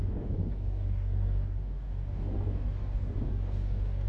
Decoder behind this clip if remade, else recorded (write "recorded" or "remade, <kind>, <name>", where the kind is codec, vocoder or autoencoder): remade, codec, DAC